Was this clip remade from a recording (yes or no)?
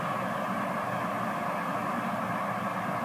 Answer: no